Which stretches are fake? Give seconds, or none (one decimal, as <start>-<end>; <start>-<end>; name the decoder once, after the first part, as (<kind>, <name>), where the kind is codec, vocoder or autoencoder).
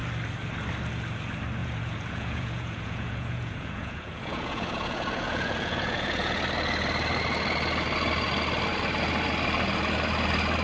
1.6-6.4 (vocoder, Vocos)